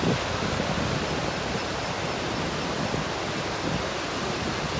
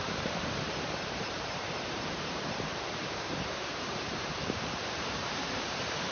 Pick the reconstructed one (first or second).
second